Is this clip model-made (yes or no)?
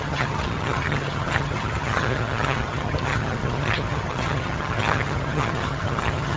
yes